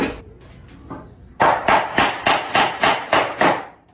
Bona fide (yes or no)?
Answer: yes